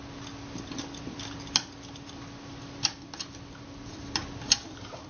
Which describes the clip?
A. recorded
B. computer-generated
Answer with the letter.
A